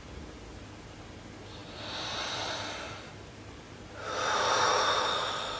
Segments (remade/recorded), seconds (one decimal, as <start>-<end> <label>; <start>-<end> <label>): 0.0-5.6 recorded